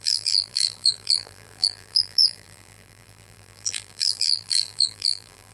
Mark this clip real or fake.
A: fake